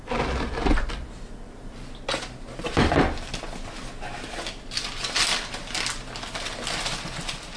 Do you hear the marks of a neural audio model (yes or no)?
no